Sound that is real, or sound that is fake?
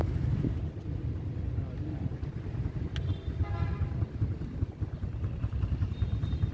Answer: real